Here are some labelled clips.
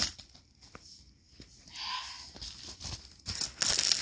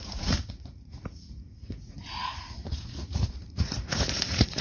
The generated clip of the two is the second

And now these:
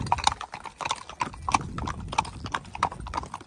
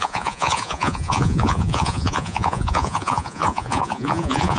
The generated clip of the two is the second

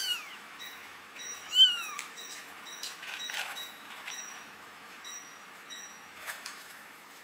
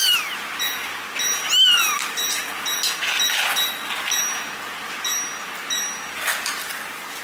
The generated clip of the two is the first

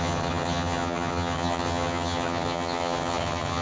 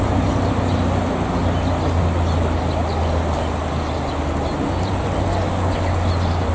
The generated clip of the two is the first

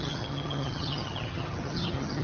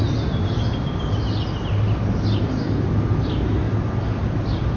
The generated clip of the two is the first